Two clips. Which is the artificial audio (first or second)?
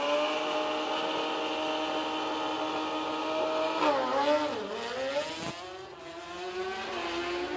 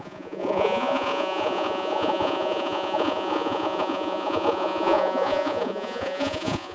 second